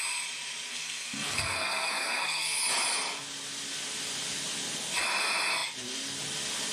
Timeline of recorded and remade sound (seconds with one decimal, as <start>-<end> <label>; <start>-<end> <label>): 0.0-0.7 recorded; 0.7-2.6 remade; 2.6-6.7 recorded